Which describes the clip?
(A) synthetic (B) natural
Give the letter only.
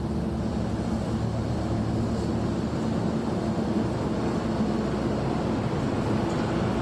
B